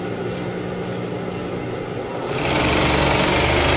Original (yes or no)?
yes